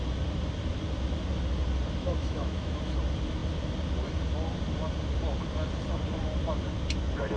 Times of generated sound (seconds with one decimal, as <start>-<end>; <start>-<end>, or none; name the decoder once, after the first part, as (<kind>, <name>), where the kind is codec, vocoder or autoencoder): 2.0-2.8 (autoencoder, DAC-VAE)